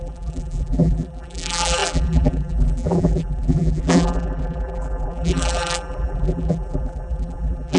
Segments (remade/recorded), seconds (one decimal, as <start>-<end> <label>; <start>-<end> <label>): 0.0-7.8 remade